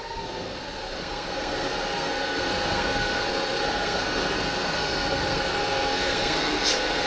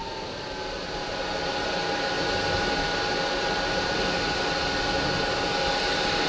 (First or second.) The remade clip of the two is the first